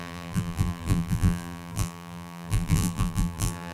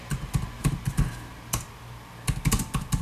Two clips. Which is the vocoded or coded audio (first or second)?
first